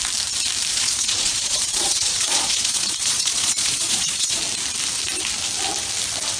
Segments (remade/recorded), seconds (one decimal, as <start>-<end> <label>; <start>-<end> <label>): 0.0-0.7 recorded; 0.7-4.4 remade; 4.4-6.4 recorded